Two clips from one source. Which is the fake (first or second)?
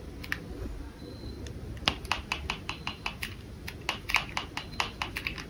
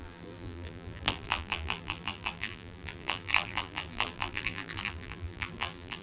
second